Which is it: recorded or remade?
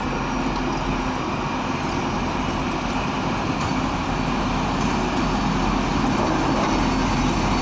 recorded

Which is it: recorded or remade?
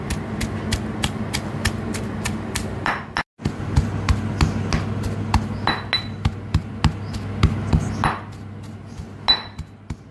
recorded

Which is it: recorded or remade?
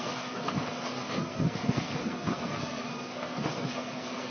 remade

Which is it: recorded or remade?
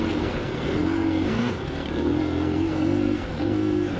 remade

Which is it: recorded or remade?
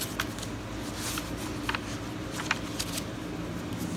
recorded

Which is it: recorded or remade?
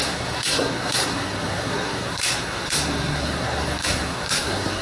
remade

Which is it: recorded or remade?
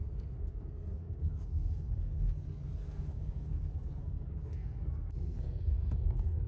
remade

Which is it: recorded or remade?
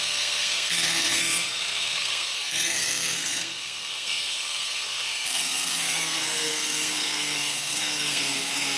remade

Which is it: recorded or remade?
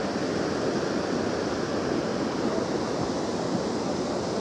recorded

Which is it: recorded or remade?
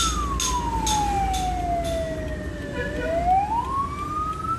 recorded